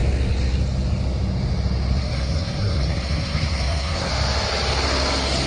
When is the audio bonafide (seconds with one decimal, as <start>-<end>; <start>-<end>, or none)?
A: 0.0-2.0; 4.1-5.5